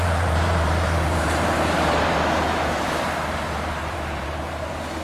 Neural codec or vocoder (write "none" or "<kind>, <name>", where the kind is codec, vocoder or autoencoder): vocoder, BigVGAN v2